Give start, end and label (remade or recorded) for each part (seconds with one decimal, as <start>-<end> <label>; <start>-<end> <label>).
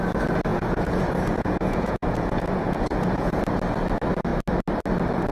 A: 0.0-0.5 recorded; 0.5-3.4 remade; 3.4-5.3 recorded